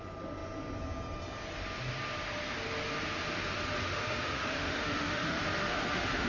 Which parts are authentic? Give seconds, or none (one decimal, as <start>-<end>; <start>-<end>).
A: 0.0-3.8